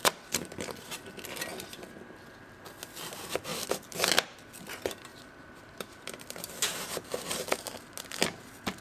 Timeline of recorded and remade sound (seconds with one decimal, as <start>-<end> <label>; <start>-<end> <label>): 0.0-3.5 recorded; 3.5-4.1 remade; 4.1-5.1 recorded; 5.1-7.3 remade; 7.3-8.8 recorded